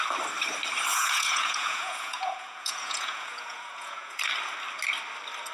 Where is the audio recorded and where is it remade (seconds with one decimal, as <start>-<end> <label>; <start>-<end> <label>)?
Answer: 0.0-0.9 recorded; 0.9-4.2 remade; 4.2-5.5 recorded